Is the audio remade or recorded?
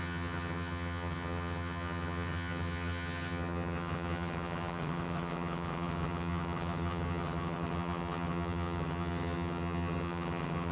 remade